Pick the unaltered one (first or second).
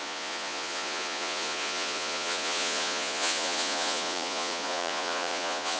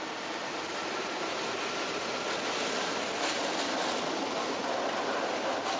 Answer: second